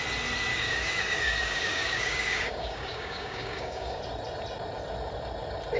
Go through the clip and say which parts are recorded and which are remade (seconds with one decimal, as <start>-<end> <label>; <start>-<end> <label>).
0.0-0.5 recorded; 0.5-4.0 remade; 4.0-5.8 recorded